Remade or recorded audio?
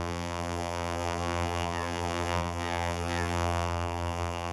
remade